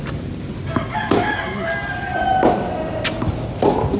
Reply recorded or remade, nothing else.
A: recorded